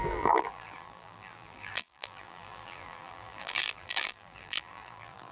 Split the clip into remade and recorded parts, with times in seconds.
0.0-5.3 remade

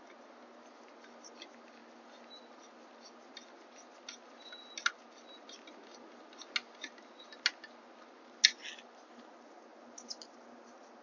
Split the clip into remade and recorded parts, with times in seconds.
0.0-11.0 recorded

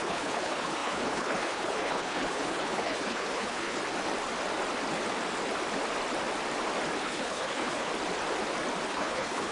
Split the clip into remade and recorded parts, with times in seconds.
0.0-3.8 remade; 3.8-7.0 recorded; 7.0-7.9 remade; 7.9-8.9 recorded; 8.9-9.5 remade